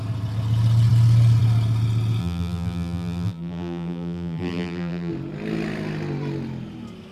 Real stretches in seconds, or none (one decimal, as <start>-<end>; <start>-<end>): 0.0-2.2; 5.1-7.1